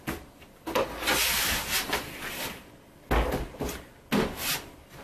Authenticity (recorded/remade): recorded